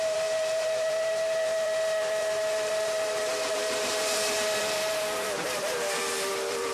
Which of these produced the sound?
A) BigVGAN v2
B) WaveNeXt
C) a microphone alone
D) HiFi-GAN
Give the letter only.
A